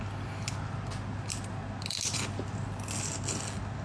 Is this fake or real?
real